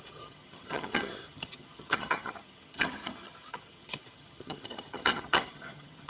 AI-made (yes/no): yes